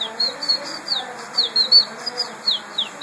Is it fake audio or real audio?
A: real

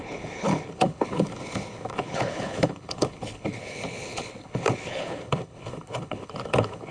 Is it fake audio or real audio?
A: fake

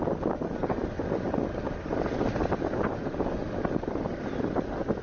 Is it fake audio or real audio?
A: real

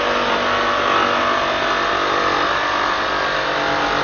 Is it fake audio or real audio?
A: real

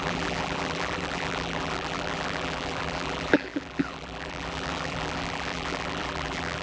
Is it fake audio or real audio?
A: fake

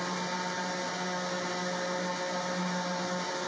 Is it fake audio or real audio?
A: real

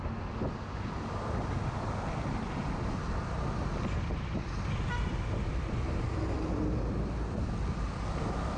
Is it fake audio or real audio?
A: real